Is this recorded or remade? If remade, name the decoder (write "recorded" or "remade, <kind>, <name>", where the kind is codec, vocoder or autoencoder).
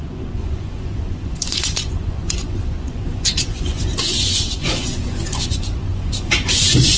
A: remade, vocoder, Vocos